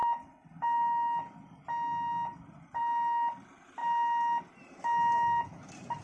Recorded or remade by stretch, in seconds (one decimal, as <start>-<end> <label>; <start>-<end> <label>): 0.0-6.0 recorded